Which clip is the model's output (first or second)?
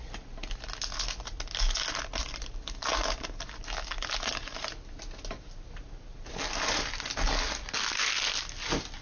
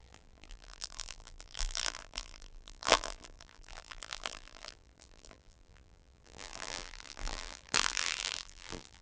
second